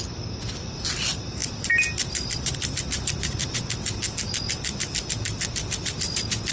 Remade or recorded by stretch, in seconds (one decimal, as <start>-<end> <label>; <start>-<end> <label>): 0.0-6.5 recorded